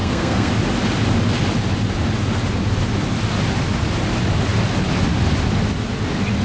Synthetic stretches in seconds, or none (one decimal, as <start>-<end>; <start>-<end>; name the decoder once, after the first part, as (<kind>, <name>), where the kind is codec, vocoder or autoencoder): 0.0-0.5 (codec, SNAC)